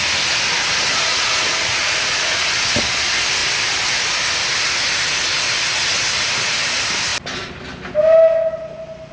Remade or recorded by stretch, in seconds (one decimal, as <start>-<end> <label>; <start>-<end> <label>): 0.0-0.9 recorded; 0.9-2.5 remade; 2.5-9.1 recorded